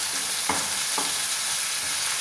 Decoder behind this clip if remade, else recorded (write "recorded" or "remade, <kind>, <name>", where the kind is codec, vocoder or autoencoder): recorded